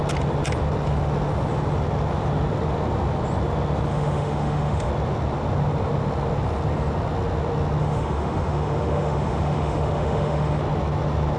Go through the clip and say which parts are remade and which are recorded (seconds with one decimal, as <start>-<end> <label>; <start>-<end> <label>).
0.0-3.9 recorded; 3.9-4.9 remade; 4.9-7.8 recorded; 7.8-10.6 remade; 10.6-11.4 recorded